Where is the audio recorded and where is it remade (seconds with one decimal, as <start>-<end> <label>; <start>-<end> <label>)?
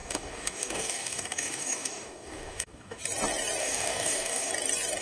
0.0-3.0 remade; 3.0-3.6 recorded; 3.6-4.5 remade; 4.5-5.0 recorded